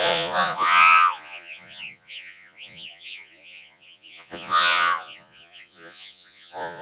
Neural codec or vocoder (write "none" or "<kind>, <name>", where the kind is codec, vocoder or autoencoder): vocoder, Vocos